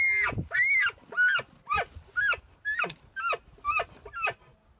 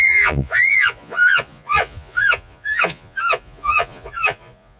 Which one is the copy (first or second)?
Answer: second